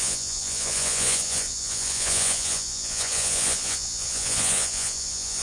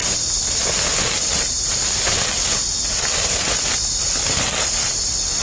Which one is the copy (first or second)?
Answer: first